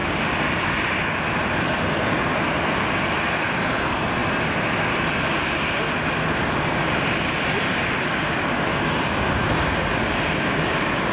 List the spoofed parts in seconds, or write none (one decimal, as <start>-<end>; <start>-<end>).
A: 0.0-2.2